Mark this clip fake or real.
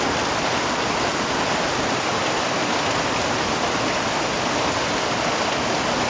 real